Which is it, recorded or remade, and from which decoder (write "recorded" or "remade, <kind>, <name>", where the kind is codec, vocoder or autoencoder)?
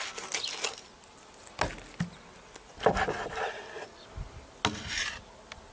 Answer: recorded